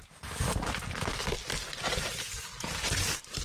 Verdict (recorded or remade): recorded